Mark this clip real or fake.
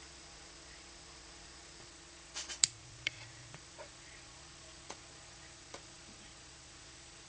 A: fake